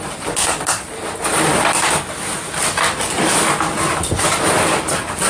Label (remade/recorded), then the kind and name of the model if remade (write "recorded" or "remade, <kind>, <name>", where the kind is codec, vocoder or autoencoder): recorded